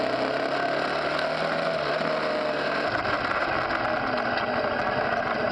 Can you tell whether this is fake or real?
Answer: real